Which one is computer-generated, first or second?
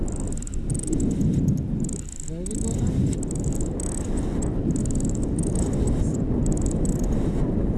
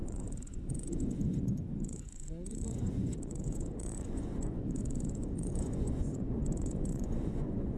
second